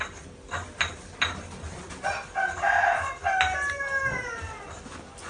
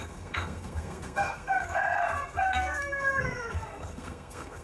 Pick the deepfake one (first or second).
second